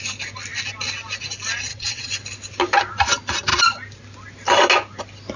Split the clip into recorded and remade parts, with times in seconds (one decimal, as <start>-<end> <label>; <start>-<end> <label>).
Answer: 0.0-1.7 recorded; 1.7-2.2 remade; 2.2-5.4 recorded

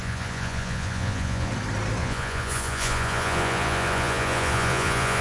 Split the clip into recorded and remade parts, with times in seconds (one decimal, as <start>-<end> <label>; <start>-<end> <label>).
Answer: 0.0-1.5 remade; 1.5-2.0 recorded; 2.0-5.2 remade